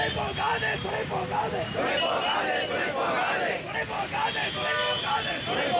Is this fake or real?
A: real